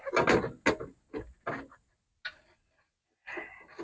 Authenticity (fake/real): real